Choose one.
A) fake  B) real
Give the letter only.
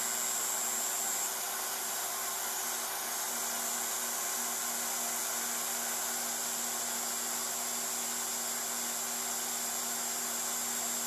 B